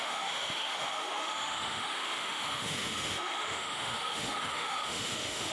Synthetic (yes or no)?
yes